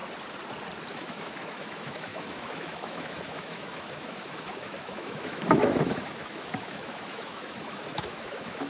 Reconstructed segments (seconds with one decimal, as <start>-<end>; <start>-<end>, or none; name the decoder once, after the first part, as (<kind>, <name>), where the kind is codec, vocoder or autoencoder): 0.9-8.7 (autoencoder, DAC-VAE)